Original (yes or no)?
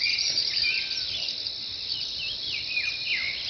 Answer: yes